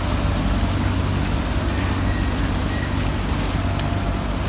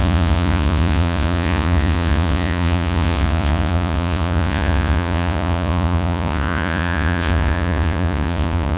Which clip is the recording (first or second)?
first